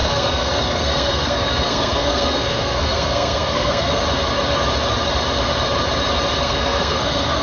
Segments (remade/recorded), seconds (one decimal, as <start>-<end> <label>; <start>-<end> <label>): 0.0-4.0 remade; 4.0-6.4 recorded; 6.4-7.4 remade